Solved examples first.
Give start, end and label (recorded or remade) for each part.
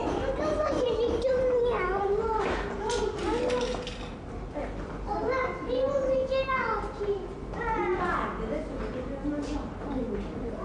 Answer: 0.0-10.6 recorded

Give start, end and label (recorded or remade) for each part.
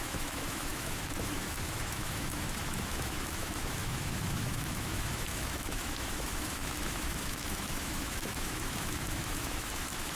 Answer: 0.0-10.1 remade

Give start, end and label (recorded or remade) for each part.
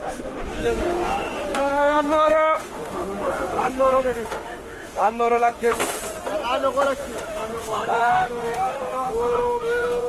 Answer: 0.0-6.0 remade; 6.0-6.9 recorded; 6.9-10.1 remade